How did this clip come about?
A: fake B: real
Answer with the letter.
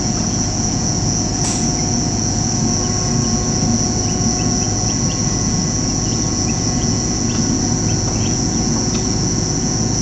A